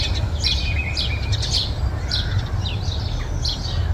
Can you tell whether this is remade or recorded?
recorded